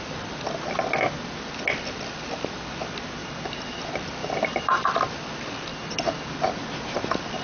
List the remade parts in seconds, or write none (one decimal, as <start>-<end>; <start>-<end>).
3.2-3.8; 4.2-4.8; 5.7-6.3

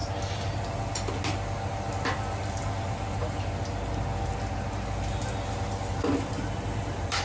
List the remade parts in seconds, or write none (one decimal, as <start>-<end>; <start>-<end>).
none

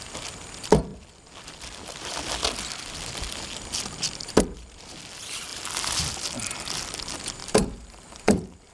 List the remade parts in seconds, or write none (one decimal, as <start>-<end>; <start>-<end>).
7.4-8.7

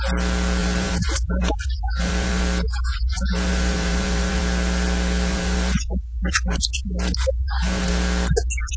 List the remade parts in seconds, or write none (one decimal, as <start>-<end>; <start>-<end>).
0.6-2.4; 2.9-4.4; 5.3-7.9

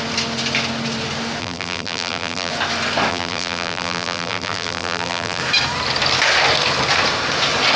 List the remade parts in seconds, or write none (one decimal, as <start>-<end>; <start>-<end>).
1.4-2.5; 3.1-5.4

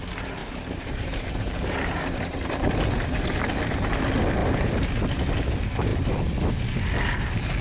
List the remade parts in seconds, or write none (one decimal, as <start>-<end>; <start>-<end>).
0.4-2.7; 4.4-5.0

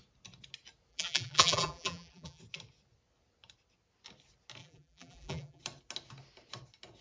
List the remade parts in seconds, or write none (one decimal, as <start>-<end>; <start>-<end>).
0.9-2.4; 4.6-5.6

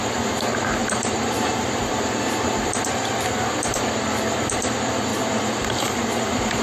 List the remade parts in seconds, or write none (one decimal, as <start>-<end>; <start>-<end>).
0.8-2.3; 5.1-6.6